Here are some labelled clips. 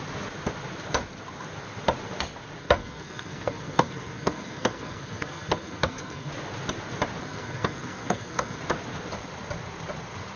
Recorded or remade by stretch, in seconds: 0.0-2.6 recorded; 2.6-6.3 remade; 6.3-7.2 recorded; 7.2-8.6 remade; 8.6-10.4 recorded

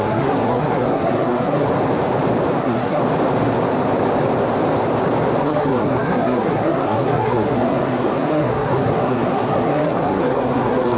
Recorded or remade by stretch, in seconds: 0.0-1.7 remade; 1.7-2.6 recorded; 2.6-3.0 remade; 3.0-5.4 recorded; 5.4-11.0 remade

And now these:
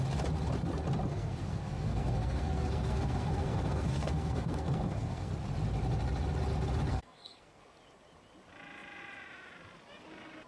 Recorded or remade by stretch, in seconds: 0.0-1.1 recorded; 1.1-5.3 remade; 5.3-6.9 recorded; 6.9-7.6 remade; 7.6-10.5 recorded